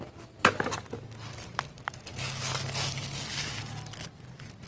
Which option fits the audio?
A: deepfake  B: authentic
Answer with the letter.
B